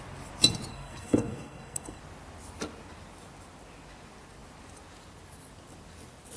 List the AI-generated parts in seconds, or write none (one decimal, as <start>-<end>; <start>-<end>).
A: 0.7-2.0